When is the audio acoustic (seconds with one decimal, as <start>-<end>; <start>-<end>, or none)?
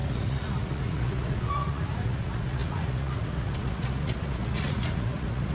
none